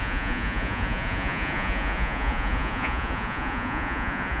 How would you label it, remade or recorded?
remade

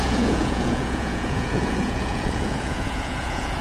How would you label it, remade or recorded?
remade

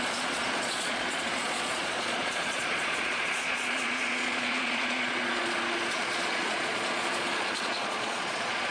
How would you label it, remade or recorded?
remade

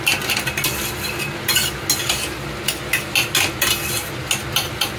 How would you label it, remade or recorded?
recorded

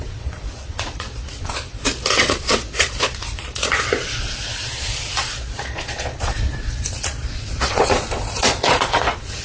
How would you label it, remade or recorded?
remade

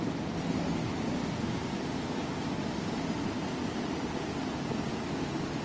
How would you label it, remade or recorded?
recorded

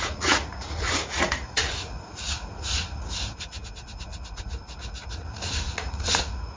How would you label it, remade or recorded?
remade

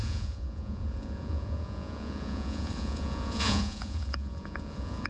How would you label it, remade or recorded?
remade